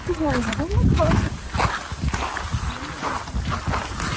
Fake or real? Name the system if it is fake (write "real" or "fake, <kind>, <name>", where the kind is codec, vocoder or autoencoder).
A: real